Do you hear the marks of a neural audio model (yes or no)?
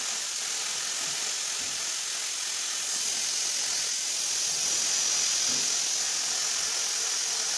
no